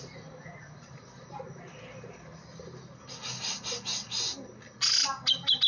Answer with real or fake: real